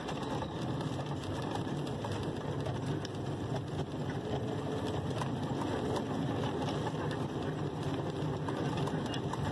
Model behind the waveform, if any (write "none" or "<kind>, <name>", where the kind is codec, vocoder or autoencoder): vocoder, BigVGAN v2